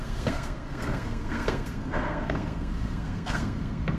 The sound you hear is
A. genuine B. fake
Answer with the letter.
B